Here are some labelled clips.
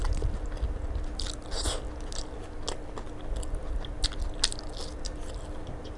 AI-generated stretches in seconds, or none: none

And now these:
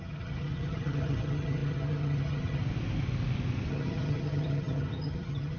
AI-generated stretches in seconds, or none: 0.0-2.6 (vocoder, HiFi-GAN); 3.7-5.6

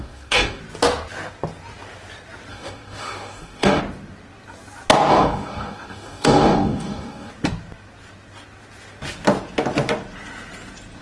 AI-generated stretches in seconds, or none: 0.0-0.6 (codec, DAC); 2.5-3.8; 5.1-7.3

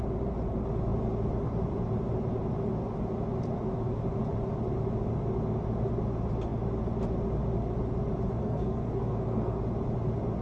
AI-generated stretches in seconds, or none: 8.4-9.6 (codec, SNAC)

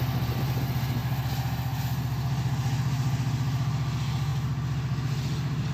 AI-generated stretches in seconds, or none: none

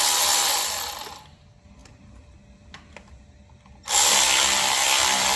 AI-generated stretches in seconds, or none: 0.6-1.2 (vocoder, BigVGAN v2)

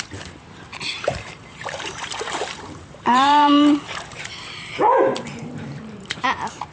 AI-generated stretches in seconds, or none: 0.7-4.3 (vocoder, BigVGAN v2); 5.1-6.7

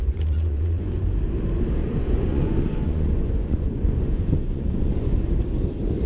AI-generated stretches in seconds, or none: 0.0-1.0 (vocoder, Vocos); 1.8-5.3